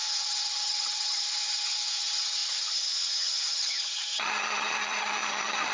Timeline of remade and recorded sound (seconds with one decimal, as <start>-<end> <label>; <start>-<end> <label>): 0.0-5.7 remade